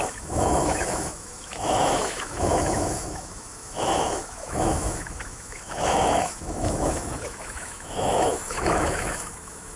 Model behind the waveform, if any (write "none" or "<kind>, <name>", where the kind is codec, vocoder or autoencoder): autoencoder, DAC-VAE